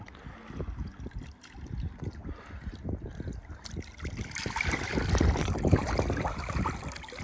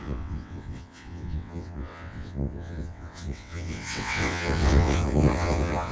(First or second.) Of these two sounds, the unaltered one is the first